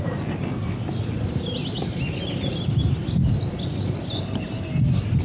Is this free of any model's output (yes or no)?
yes